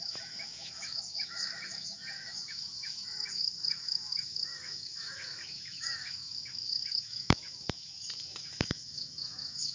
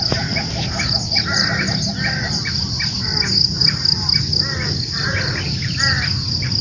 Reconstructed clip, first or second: first